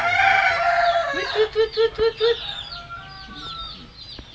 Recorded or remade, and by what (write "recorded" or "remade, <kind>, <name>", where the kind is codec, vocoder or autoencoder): recorded